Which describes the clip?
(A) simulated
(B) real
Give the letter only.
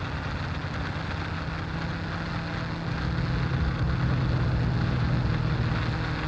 B